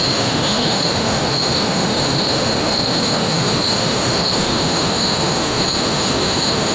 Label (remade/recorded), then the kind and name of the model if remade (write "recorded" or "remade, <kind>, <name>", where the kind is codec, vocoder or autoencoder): remade, autoencoder, DAC-VAE